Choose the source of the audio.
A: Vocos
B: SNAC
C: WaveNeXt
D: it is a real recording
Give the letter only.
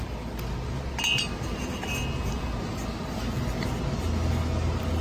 D